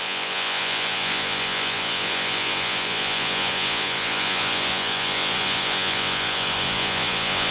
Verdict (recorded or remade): remade